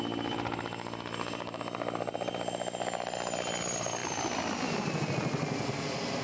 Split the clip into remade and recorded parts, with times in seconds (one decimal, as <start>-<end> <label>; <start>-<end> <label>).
0.0-6.2 recorded

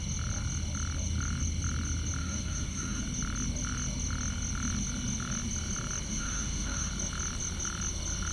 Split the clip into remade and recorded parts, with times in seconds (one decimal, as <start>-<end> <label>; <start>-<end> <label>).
0.0-2.2 recorded; 2.2-3.0 remade; 3.0-6.1 recorded; 6.1-6.9 remade; 6.9-8.3 recorded

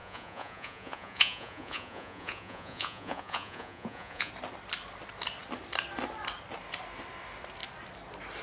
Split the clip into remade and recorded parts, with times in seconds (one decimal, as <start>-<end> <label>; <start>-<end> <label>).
0.0-4.3 remade; 4.3-8.4 recorded

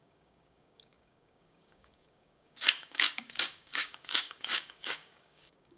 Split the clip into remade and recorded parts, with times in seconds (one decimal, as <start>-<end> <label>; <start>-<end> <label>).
0.0-5.8 remade